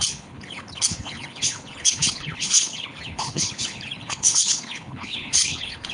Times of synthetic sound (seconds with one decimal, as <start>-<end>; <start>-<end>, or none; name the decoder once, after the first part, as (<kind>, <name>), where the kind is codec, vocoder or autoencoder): 0.0-5.9 (codec, HILCodec)